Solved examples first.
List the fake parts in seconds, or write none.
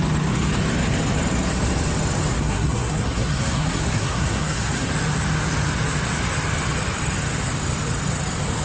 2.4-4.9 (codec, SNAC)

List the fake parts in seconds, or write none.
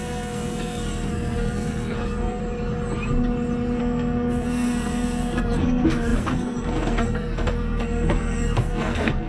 0.0-2.4 (codec, SNAC); 3.8-9.3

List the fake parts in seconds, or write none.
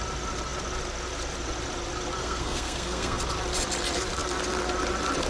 2.2-3.2 (codec, SNAC)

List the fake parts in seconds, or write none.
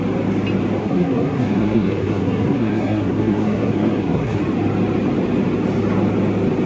0.8-4.4 (codec, SNAC)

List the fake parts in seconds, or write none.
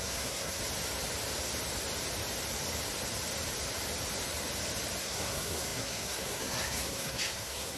0.0-0.6 (codec, SNAC); 5.0-7.8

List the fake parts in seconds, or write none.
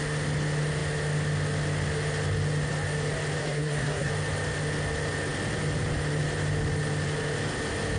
3.4-4.1 (codec, SNAC)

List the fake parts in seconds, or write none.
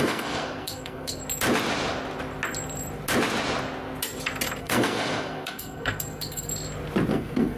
0.0-1.2 (codec, SNAC); 4.6-6.5; 7.1-7.6